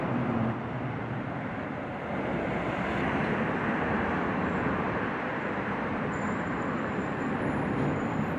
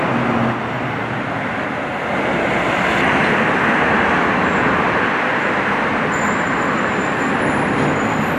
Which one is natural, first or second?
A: second